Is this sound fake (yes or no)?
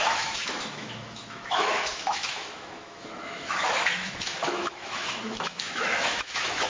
yes